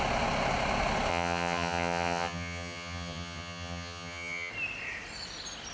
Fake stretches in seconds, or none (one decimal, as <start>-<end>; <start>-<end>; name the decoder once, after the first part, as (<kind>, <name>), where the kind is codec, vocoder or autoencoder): 1.1-4.5 (vocoder, HiFi-GAN)

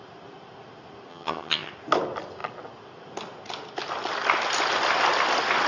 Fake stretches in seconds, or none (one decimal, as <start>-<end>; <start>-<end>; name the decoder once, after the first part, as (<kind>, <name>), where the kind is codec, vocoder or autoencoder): 1.1-1.7 (vocoder, HiFi-GAN)

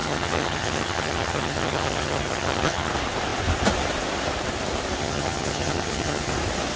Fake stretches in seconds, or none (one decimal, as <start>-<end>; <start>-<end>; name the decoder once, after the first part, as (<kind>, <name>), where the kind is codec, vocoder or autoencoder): 0.0-2.9 (vocoder, HiFi-GAN); 5.0-6.3

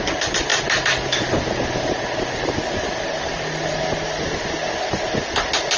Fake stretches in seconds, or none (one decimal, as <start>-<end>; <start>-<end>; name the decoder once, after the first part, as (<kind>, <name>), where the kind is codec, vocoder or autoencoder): none

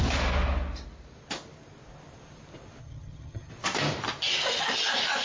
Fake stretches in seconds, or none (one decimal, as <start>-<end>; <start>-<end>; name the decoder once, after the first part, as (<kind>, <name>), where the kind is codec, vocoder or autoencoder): 2.8-3.5 (vocoder, HiFi-GAN)

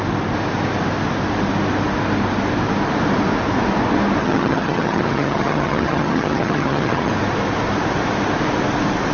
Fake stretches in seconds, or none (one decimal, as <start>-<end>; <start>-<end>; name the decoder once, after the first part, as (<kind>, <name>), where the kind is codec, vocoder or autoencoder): 4.2-7.1 (vocoder, HiFi-GAN)

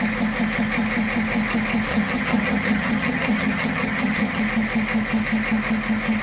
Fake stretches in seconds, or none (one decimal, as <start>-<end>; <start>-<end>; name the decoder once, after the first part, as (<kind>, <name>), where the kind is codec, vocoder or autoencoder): 1.9-4.4 (vocoder, HiFi-GAN)